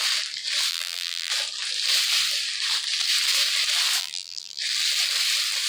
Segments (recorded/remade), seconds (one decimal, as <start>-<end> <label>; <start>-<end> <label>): 0.0-0.7 recorded; 0.7-1.3 remade; 1.3-4.0 recorded; 4.0-4.6 remade; 4.6-5.7 recorded